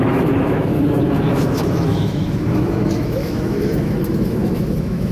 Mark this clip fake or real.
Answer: fake